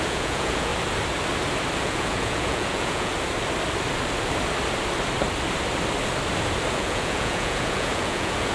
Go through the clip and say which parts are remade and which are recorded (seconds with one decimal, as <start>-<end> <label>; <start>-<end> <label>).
0.0-0.7 remade; 0.7-1.8 recorded; 1.8-3.1 remade; 3.1-6.7 recorded; 6.7-8.5 remade